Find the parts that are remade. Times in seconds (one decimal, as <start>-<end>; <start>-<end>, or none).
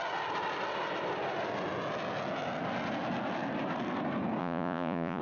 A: 4.4-5.2